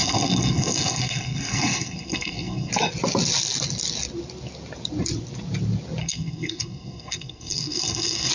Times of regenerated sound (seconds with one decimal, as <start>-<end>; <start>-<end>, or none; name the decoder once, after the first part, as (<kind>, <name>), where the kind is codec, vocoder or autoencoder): 0.0-2.7 (codec, SNAC); 6.0-8.3